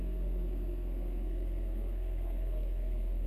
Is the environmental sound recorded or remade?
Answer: remade